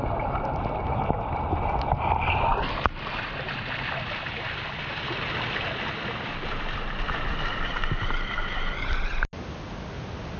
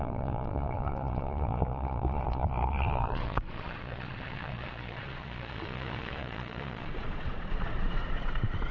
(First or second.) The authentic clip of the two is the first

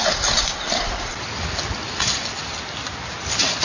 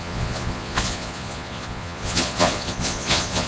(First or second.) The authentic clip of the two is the first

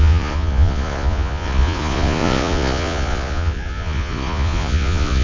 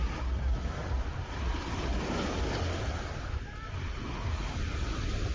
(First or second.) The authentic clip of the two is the second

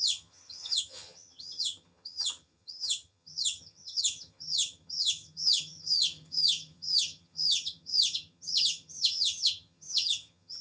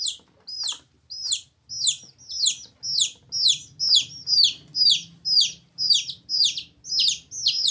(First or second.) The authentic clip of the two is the second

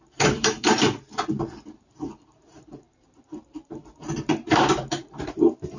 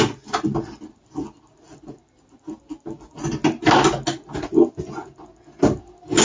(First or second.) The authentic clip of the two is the second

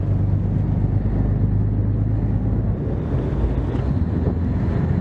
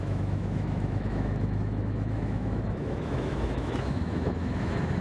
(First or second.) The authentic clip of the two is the first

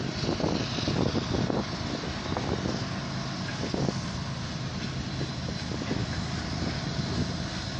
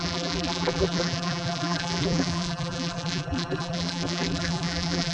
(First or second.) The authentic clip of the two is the first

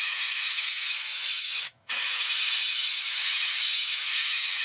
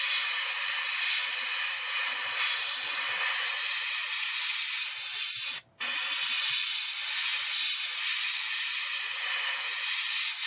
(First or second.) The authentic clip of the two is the second